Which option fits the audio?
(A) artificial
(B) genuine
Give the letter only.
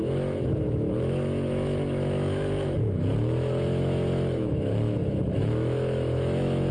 A